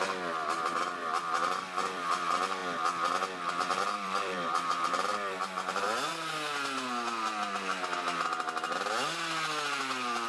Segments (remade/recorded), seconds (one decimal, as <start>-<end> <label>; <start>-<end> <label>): 0.0-2.6 remade; 2.6-3.5 recorded; 3.5-6.1 remade; 6.1-9.8 recorded; 9.8-10.3 remade